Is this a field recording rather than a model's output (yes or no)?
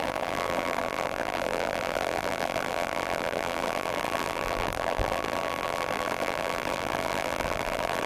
no